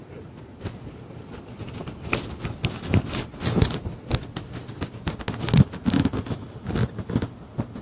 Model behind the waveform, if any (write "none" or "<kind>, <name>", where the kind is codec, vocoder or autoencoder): none